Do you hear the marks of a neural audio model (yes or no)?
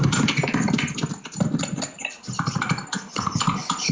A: no